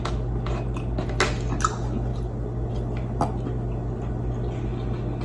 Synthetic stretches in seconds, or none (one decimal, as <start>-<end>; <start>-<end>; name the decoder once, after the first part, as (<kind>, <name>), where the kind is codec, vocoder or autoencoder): none